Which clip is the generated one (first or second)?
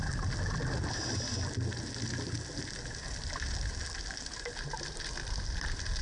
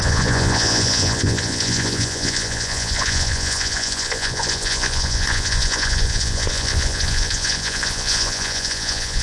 second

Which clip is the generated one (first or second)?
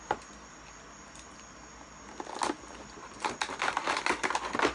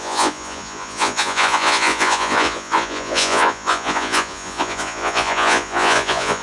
second